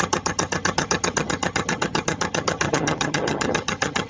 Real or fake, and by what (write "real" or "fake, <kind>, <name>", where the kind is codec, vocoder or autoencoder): fake, vocoder, HiFi-GAN